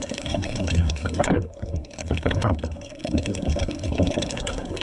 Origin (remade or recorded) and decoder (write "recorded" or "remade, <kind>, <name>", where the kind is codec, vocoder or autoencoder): remade, codec, SNAC